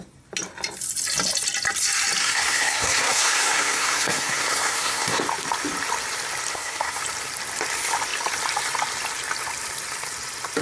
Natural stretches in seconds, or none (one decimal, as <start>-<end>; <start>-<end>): 0.0-2.2; 5.2-6.5; 7.0-10.6